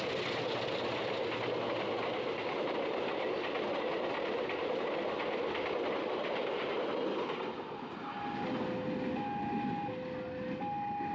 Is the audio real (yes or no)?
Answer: yes